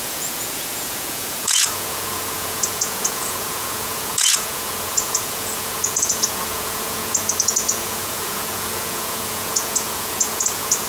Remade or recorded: remade